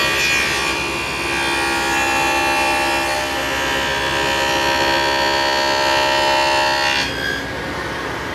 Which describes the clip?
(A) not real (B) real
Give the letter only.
B